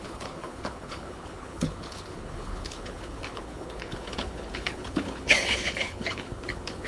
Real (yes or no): no